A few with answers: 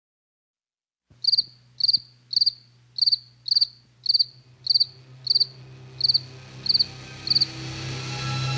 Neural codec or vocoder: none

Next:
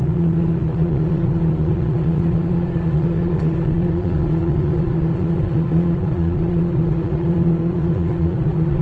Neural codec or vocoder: vocoder, Vocos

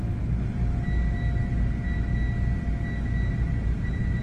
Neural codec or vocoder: none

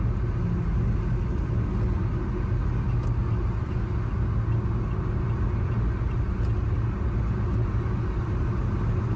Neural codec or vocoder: none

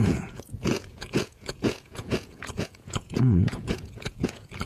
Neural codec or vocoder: vocoder, Vocos